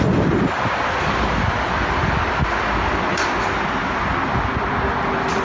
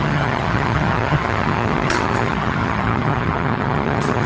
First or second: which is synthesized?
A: second